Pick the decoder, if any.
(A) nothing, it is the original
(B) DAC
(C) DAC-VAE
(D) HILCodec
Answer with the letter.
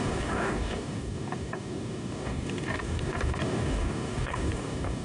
B